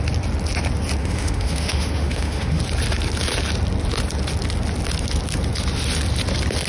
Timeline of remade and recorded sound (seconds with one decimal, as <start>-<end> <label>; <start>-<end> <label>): 0.0-1.0 recorded; 1.0-2.6 remade; 2.6-6.7 recorded